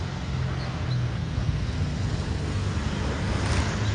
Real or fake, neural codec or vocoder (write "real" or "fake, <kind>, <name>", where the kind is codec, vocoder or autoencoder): real